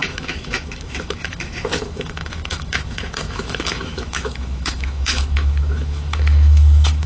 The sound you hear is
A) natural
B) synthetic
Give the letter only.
B